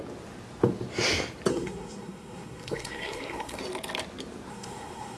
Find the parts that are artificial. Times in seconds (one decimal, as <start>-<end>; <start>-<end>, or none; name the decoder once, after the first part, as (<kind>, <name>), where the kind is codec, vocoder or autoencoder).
1.5-3.6 (codec, SNAC); 4.5-5.2